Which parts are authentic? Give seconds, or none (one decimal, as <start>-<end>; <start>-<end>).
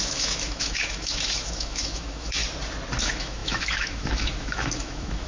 2.4-3.0